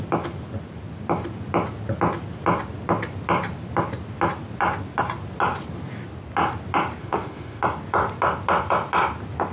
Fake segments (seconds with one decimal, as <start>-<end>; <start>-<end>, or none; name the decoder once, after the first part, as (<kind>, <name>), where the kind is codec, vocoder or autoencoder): 7.0-7.6 (autoencoder, DAC-VAE)